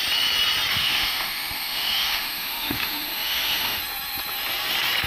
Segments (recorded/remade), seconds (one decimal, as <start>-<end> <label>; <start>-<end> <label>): 0.0-0.7 recorded; 0.7-3.8 remade; 3.8-5.1 recorded